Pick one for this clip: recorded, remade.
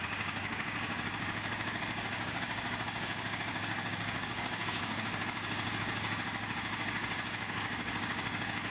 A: remade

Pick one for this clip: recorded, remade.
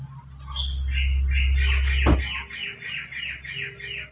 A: recorded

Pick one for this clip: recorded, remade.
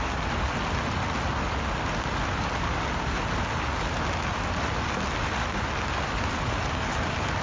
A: recorded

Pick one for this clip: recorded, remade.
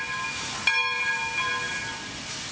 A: recorded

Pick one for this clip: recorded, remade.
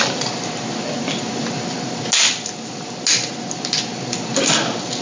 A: recorded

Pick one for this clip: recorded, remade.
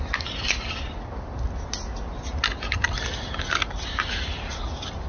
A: recorded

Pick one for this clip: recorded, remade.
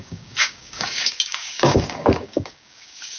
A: remade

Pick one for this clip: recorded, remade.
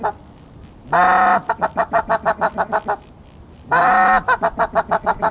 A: recorded